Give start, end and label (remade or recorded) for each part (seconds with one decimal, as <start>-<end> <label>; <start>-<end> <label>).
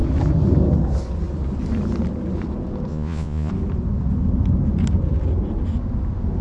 0.0-2.9 recorded; 2.9-3.5 remade; 3.5-6.4 recorded